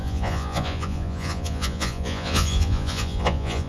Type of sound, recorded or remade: remade